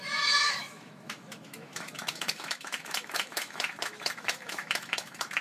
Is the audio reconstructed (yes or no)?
yes